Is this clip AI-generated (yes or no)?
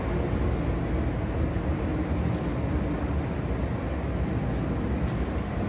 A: no